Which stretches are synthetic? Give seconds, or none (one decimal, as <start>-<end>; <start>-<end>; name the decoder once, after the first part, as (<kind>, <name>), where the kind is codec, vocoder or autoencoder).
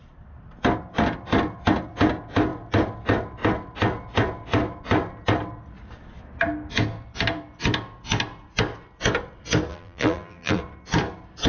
9.7-10.6 (vocoder, BigVGAN v2)